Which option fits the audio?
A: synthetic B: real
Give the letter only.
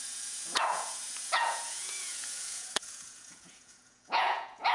A